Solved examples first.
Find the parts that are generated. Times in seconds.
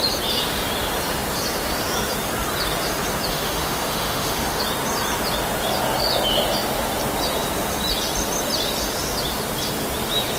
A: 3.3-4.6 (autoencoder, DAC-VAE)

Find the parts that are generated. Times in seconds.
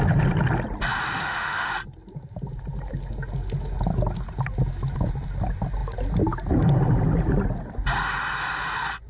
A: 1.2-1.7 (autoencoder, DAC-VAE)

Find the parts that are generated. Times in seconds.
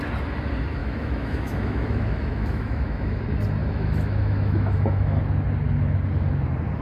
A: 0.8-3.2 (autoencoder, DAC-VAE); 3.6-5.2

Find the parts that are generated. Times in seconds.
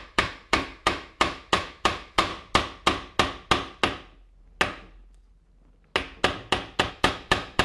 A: 0.0-2.3 (autoencoder, DAC-VAE); 6.9-7.6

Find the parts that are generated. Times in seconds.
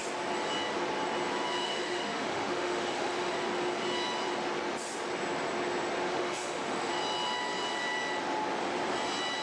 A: 1.6-3.3 (autoencoder, DAC-VAE); 6.1-6.9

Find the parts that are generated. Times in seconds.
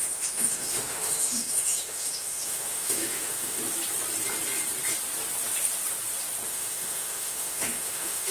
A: 0.0-3.6 (autoencoder, DAC-VAE); 6.5-8.3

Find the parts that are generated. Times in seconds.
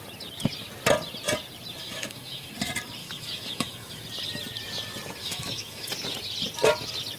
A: 1.8-2.5 (autoencoder, DAC-VAE); 3.0-4.0; 5.2-5.9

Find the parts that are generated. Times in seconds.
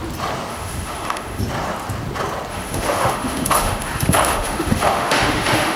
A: 0.5-1.4 (autoencoder, DAC-VAE); 2.5-5.8